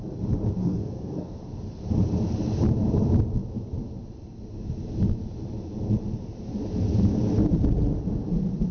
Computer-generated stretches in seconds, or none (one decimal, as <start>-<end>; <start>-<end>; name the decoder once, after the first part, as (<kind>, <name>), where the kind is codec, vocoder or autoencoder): 0.6-1.4 (codec, SNAC)